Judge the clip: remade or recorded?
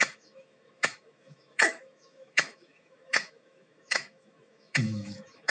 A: remade